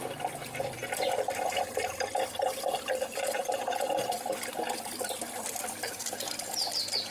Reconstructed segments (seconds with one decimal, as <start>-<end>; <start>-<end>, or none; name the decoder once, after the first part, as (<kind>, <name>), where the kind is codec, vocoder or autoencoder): 0.0-0.8 (vocoder, BigVGAN v2); 1.8-7.1